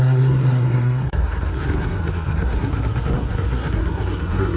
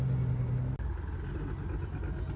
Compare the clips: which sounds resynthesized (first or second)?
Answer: first